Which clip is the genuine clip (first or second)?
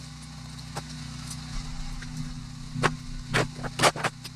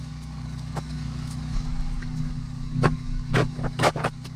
first